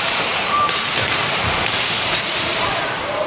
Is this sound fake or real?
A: fake